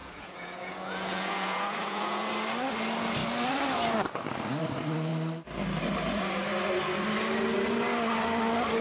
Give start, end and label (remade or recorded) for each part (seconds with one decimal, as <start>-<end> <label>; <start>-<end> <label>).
0.0-2.3 remade; 2.3-8.8 recorded